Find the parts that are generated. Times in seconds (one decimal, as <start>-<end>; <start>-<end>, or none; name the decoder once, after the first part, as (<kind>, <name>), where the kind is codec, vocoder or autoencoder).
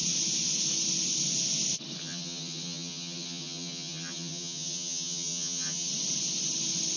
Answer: 2.0-5.9 (vocoder, HiFi-GAN)